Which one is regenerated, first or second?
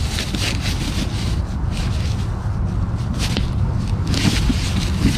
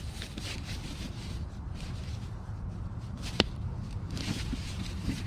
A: second